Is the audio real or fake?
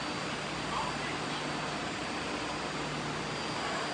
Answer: real